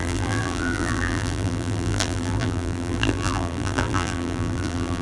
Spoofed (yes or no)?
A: yes